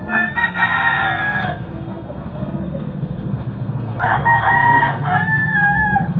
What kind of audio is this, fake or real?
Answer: fake